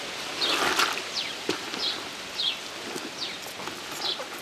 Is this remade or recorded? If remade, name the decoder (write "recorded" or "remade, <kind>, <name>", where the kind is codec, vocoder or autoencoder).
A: recorded